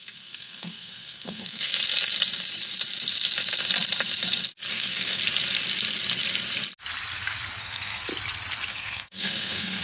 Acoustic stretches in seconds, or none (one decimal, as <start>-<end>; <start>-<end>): 1.7-4.7; 5.2-7.6; 8.1-8.7